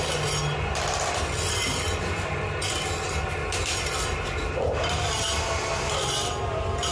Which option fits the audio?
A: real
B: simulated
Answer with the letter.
A